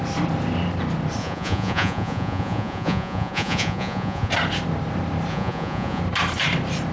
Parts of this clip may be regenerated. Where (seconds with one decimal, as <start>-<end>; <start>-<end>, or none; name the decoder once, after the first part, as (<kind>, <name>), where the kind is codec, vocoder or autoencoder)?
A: 1.2-4.3 (vocoder, Vocos); 5.3-6.0